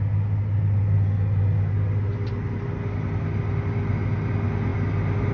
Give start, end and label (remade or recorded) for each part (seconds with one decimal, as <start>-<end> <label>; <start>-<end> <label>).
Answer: 0.0-5.3 recorded